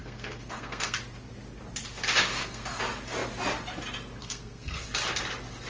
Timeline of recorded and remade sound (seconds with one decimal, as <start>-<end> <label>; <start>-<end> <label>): 0.0-1.0 remade; 1.0-2.3 recorded; 2.3-2.8 remade; 2.8-4.2 recorded; 4.2-4.8 remade; 4.8-5.7 recorded